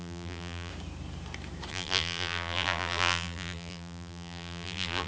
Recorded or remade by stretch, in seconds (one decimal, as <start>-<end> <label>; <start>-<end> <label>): 0.0-0.7 remade; 0.7-1.7 recorded; 1.7-5.1 remade